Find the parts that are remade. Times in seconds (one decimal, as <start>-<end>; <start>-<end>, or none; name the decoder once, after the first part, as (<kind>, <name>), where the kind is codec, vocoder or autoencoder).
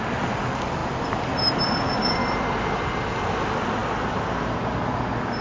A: none